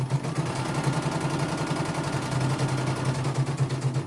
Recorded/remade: recorded